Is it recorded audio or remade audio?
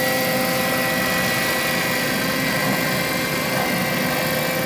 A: recorded